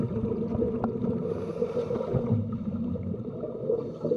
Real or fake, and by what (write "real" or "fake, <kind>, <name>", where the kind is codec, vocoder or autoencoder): real